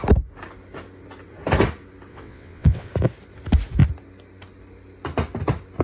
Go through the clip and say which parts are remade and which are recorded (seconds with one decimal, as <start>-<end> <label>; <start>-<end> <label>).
0.0-2.1 recorded; 2.1-2.9 remade; 2.9-5.8 recorded